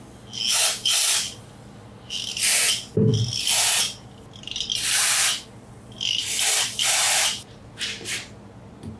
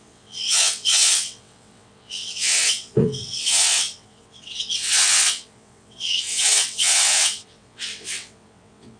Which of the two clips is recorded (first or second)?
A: first